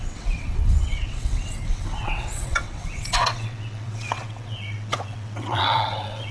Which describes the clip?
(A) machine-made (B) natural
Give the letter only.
A